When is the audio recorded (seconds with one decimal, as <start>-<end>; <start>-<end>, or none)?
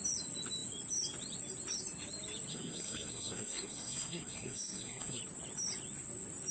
0.0-2.5; 5.2-6.5